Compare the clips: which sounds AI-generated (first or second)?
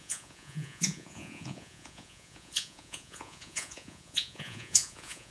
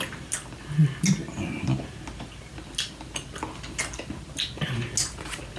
first